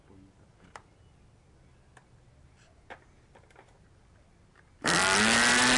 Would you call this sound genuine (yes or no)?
yes